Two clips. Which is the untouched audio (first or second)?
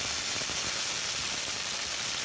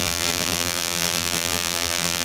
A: first